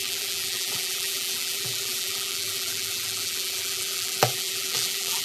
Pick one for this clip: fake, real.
fake